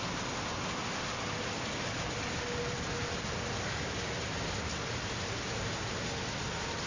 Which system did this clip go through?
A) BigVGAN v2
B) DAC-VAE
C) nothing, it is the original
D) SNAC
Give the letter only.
C